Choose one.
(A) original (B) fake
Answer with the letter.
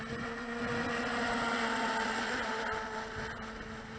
A